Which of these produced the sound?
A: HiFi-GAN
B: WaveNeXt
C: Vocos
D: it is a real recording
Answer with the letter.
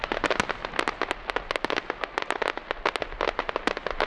D